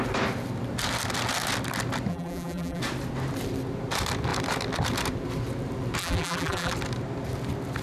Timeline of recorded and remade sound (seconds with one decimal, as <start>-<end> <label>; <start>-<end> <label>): 0.0-2.1 recorded; 2.1-2.8 remade; 2.8-6.0 recorded; 6.0-6.7 remade; 6.7-7.8 recorded